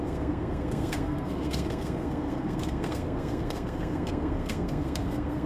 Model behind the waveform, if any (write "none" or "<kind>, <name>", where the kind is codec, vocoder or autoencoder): codec, SNAC